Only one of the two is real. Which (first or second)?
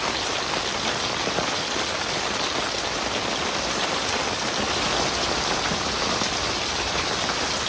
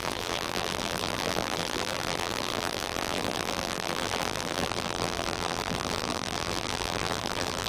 first